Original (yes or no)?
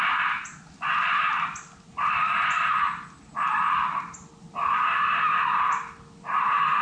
yes